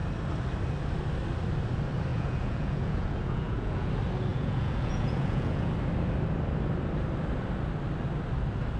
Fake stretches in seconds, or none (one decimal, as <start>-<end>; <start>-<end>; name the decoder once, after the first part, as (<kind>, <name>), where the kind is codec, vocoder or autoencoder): 2.1-3.9 (vocoder, Vocos); 4.3-5.7